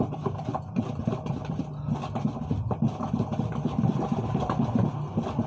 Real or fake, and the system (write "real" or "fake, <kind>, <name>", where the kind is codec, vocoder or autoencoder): fake, vocoder, BigVGAN v2